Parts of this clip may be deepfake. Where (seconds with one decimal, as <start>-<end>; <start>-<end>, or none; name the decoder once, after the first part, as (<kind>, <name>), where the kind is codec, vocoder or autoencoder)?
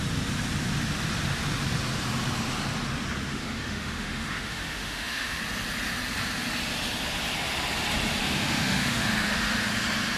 3.3-5.4 (autoencoder, DAC-VAE); 8.2-9.7